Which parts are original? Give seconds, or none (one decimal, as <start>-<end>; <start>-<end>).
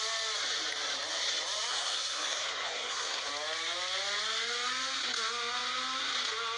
0.0-1.7; 3.3-6.6